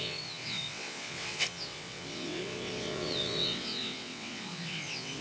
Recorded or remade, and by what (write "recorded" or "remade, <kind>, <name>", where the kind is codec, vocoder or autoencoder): remade, vocoder, WaveNeXt